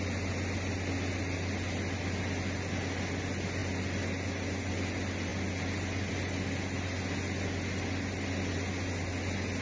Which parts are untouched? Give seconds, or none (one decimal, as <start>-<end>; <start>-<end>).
0.0-9.6